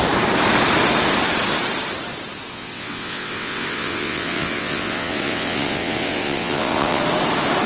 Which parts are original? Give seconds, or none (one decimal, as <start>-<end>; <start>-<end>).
0.0-2.5; 7.0-7.7